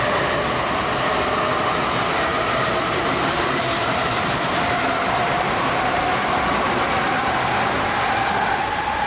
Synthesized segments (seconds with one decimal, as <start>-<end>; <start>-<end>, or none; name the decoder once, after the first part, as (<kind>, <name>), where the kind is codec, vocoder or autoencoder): 2.3-4.7 (vocoder, BigVGAN v2)